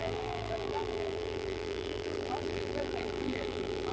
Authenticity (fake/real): fake